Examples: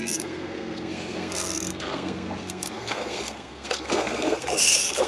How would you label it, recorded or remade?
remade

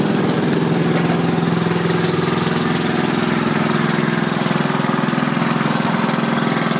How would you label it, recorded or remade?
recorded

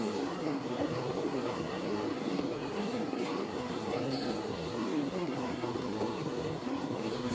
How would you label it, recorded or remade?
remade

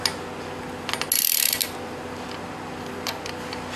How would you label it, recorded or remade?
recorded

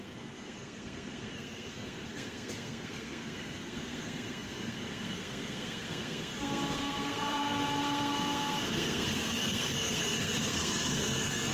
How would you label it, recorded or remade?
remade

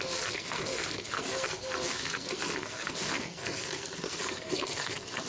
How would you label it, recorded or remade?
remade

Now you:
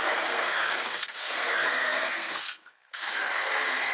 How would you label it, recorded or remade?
remade